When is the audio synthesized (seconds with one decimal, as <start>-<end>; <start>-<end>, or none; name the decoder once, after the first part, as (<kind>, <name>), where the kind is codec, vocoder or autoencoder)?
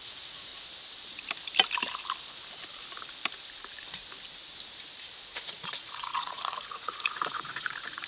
0.0-0.5 (vocoder, Vocos); 5.4-8.1